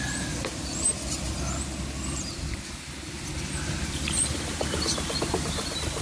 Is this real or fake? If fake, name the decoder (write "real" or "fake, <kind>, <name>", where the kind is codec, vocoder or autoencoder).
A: real